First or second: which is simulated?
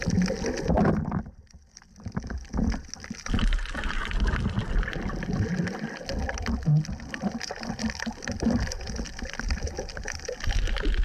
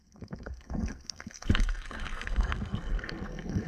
second